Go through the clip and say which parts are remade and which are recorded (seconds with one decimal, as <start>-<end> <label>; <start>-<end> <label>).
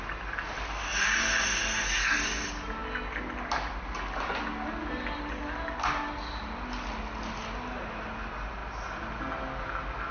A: 0.0-10.1 recorded